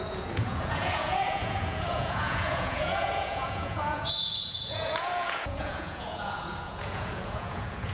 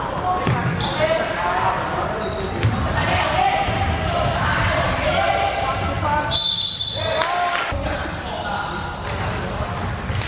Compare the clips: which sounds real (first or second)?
second